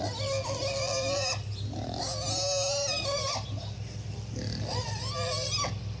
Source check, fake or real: real